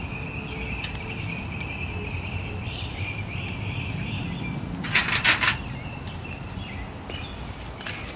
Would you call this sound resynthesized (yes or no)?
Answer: no